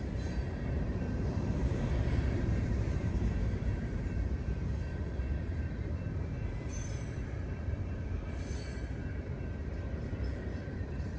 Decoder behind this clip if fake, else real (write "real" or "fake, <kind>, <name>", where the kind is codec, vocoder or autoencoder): fake, vocoder, BigVGAN v2